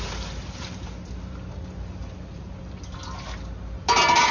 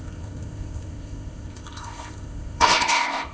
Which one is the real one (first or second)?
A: first